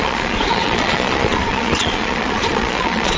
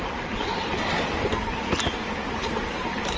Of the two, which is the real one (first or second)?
second